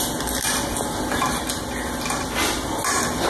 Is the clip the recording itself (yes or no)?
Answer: yes